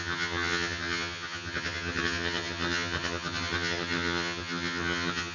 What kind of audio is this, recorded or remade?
remade